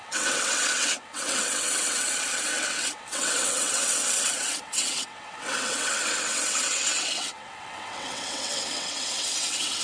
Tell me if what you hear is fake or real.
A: fake